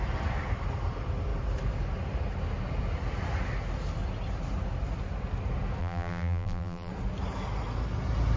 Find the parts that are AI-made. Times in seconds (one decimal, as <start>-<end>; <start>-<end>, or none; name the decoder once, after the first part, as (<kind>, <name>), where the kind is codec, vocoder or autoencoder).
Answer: 5.8-6.9 (vocoder, BigVGAN v2)